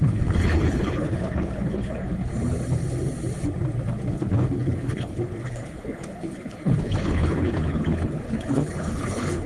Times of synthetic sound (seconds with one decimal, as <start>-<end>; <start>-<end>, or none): 0.0-2.3; 4.1-9.5